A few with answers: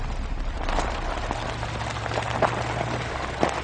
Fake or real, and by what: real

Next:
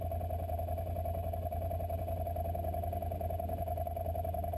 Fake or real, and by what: real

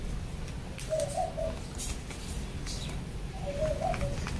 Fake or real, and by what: real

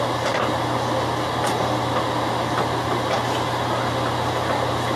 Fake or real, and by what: real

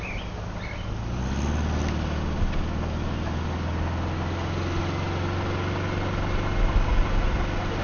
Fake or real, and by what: real